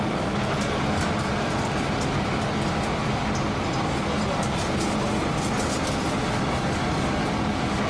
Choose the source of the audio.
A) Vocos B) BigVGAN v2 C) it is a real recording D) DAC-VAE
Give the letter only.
C